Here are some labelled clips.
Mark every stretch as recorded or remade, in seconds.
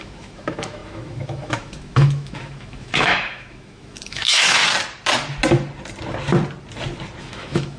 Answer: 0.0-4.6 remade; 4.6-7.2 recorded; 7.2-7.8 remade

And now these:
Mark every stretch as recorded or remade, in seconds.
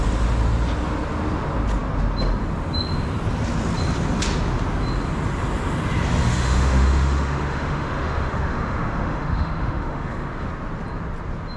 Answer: 0.0-6.2 recorded; 6.2-10.5 remade; 10.5-11.6 recorded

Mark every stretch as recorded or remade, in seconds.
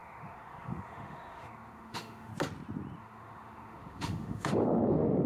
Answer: 0.0-2.3 remade; 2.3-3.0 recorded; 3.0-5.3 remade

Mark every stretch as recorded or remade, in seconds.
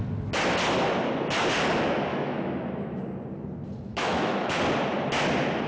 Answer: 0.0-2.1 recorded; 2.1-3.0 remade; 3.0-3.9 recorded; 3.9-4.6 remade; 4.6-5.7 recorded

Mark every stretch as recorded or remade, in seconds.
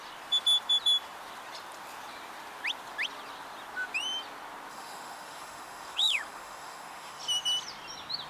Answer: 0.0-4.7 recorded; 4.7-7.2 remade; 7.2-8.3 recorded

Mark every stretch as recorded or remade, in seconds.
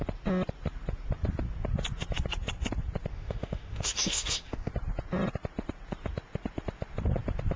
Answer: 0.0-3.1 recorded; 3.1-4.7 remade; 4.7-7.6 recorded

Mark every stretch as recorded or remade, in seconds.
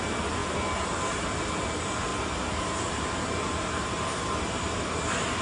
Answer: 0.0-5.4 recorded